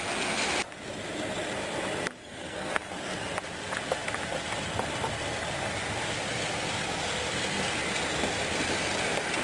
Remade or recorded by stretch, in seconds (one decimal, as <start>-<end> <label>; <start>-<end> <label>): 0.0-2.2 recorded; 2.2-2.9 remade; 2.9-9.4 recorded